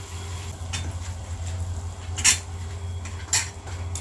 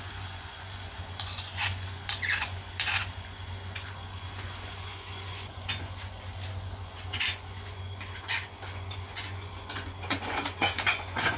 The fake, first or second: second